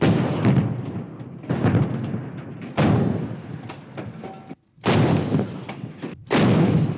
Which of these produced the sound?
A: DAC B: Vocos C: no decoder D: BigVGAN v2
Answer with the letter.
C